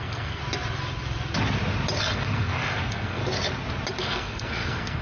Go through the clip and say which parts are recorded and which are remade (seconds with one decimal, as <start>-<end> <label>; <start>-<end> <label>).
0.0-0.4 remade; 0.4-2.1 recorded; 2.1-3.2 remade; 3.2-4.0 recorded; 4.0-5.0 remade